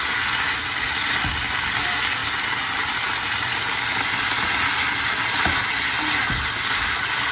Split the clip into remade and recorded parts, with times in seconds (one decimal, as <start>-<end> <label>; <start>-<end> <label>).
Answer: 0.0-7.3 recorded